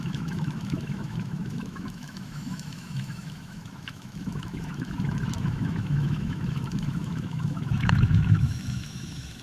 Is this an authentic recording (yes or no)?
no